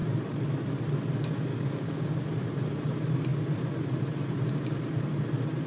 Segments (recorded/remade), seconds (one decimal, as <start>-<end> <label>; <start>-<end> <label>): 0.0-1.5 recorded; 1.5-2.2 remade; 2.2-5.7 recorded